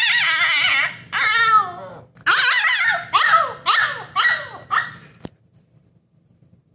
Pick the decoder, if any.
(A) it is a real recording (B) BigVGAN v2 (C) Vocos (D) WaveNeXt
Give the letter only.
A